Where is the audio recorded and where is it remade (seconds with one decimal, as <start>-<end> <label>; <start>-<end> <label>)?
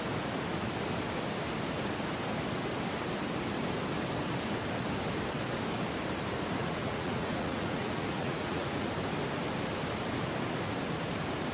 0.0-6.6 recorded; 6.6-8.9 remade; 8.9-11.5 recorded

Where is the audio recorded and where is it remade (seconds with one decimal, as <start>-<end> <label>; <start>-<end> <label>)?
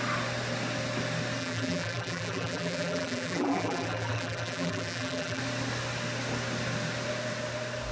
0.0-1.4 recorded; 1.4-5.4 remade; 5.4-7.9 recorded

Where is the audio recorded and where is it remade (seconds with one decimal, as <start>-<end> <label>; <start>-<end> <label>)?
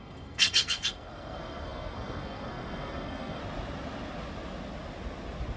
0.0-3.4 remade; 3.4-5.6 recorded